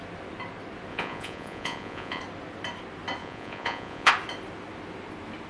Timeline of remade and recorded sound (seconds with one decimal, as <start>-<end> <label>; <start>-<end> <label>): 0.0-0.9 recorded; 0.9-2.2 remade; 2.2-3.2 recorded; 3.2-4.1 remade; 4.1-5.5 recorded